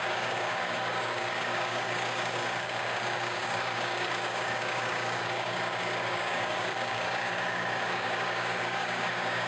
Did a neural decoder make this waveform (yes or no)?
yes